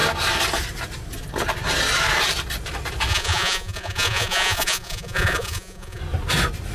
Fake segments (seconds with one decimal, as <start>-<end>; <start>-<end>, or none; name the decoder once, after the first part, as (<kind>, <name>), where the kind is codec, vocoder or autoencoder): 3.1-6.0 (vocoder, Vocos)